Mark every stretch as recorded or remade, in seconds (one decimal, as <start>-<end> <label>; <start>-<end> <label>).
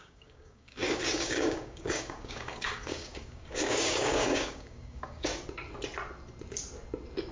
0.0-5.3 remade; 5.3-7.3 recorded